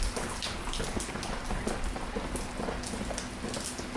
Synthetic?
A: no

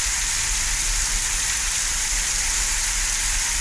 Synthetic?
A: yes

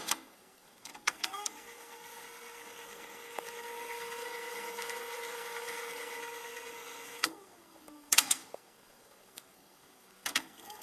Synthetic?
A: yes